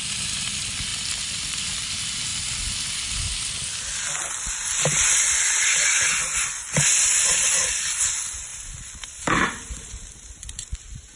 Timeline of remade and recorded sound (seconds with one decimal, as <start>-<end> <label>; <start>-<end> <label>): 0.0-0.9 recorded; 0.9-1.6 remade; 1.6-8.5 recorded; 8.5-11.2 remade